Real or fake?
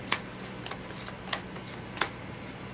real